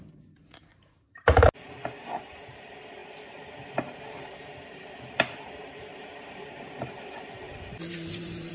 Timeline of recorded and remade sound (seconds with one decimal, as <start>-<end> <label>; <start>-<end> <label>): 0.0-0.7 recorded; 0.7-2.4 remade; 2.4-3.0 recorded; 3.0-5.0 remade; 5.0-5.6 recorded; 5.6-8.5 remade